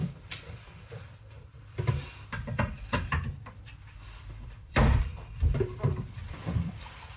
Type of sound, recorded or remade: remade